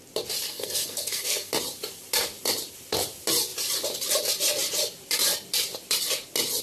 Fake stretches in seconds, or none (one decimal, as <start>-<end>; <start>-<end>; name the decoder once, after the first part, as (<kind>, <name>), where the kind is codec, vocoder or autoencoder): 0.4-1.5 (codec, SNAC)

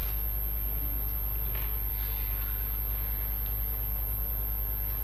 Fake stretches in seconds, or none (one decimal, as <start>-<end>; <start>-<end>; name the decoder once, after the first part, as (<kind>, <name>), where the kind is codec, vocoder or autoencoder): none

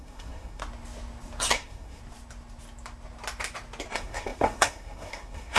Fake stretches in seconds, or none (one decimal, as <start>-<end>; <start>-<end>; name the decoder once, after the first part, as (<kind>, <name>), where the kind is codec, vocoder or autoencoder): 0.0-0.6 (codec, SNAC); 1.5-2.0; 3.9-5.6

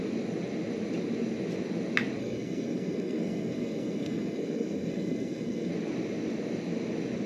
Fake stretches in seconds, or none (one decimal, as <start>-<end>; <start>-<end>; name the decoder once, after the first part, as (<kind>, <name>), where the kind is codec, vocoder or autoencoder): 2.2-5.7 (codec, SNAC)